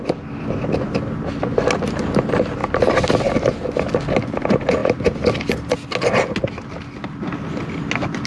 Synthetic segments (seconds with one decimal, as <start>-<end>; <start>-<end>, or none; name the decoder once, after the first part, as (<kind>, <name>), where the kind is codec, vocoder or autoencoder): none